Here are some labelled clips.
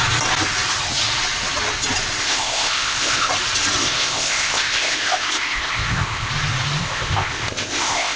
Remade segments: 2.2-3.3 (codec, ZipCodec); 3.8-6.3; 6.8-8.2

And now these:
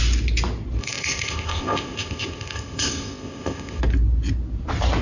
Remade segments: 0.8-3.8 (codec, ZipCodec)

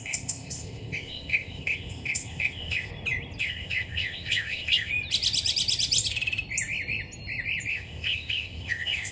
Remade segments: 0.0-2.9 (codec, ZipCodec); 3.4-4.9; 7.7-9.1

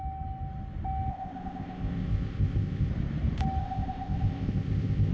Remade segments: 1.1-2.9 (codec, ZipCodec); 3.6-5.1

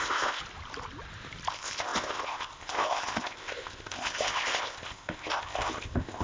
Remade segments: 0.0-0.4 (codec, ZipCodec); 1.5-6.2